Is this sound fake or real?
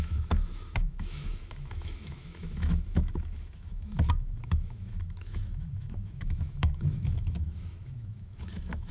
fake